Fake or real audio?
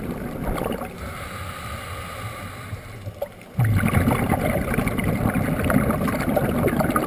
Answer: real